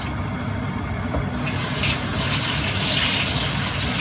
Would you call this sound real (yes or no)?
yes